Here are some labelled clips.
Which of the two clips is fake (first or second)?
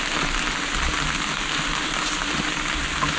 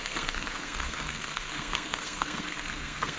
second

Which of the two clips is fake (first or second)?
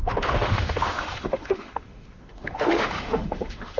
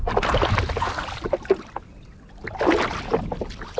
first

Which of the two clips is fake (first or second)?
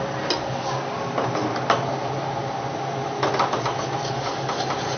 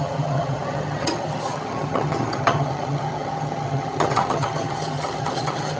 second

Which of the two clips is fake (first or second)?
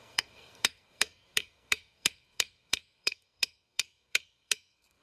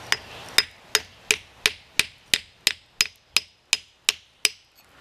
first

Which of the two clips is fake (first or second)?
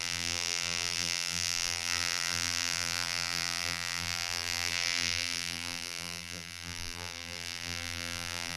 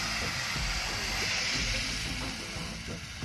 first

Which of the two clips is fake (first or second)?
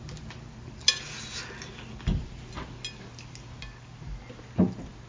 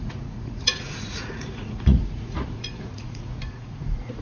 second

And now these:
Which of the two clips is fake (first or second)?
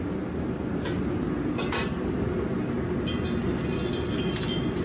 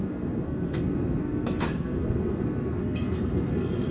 second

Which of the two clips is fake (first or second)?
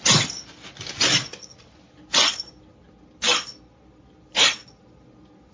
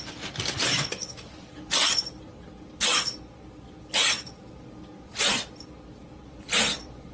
second